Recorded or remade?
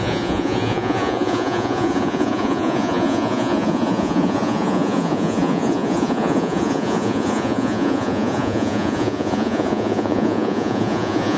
remade